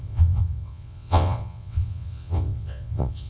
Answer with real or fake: fake